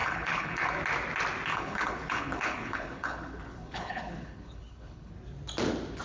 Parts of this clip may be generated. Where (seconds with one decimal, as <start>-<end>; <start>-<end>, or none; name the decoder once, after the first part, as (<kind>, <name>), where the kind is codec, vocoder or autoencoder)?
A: 0.0-0.8 (codec, HILCodec); 1.5-5.1